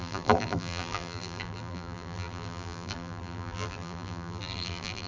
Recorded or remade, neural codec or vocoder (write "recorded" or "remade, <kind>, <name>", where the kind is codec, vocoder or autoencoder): remade, vocoder, BigVGAN v2